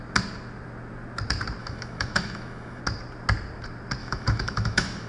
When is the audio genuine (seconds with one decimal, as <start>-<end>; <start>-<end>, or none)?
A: 0.0-1.6; 2.8-4.0